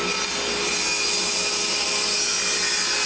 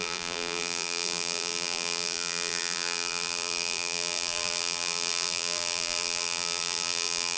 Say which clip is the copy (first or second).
second